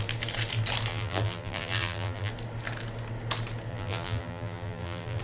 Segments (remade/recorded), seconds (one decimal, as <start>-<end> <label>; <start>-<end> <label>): 0.0-0.9 recorded; 0.9-2.3 remade; 2.3-3.7 recorded; 3.7-5.2 remade